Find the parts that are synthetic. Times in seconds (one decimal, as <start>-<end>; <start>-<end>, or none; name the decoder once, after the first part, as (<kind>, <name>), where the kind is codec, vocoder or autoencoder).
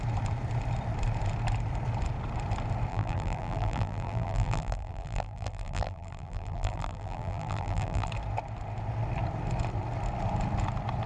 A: 2.9-8.1 (vocoder, BigVGAN v2)